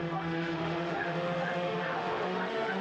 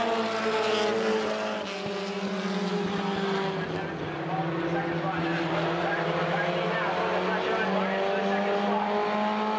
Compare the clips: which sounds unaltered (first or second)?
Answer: second